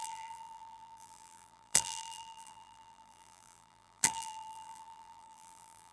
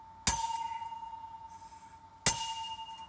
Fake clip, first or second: first